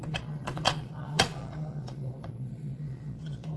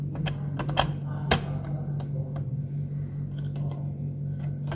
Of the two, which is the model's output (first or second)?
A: first